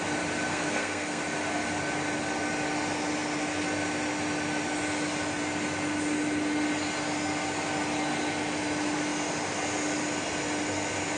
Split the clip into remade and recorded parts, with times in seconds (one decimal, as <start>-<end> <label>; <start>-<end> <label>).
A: 0.0-0.5 recorded; 0.5-1.2 remade; 1.2-11.2 recorded